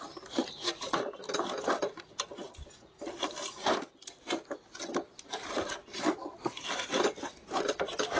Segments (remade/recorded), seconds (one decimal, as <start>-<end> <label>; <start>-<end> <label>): 0.0-8.2 recorded